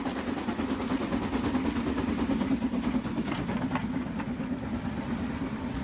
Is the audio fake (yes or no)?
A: no